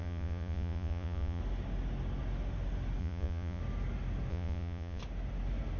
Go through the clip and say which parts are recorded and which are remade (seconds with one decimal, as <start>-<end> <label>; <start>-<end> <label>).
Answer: 0.0-1.4 remade; 1.4-3.0 recorded; 3.0-3.6 remade; 3.6-4.3 recorded; 4.3-5.0 remade; 5.0-5.8 recorded